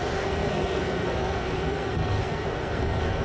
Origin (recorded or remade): remade